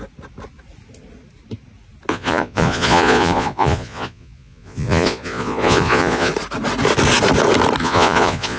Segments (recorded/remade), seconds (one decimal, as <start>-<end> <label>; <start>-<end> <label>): 0.0-2.1 recorded; 2.1-6.3 remade; 6.3-7.8 recorded; 7.8-8.6 remade